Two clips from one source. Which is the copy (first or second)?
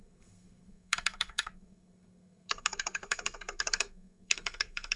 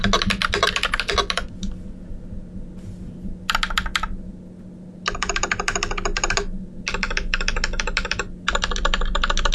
first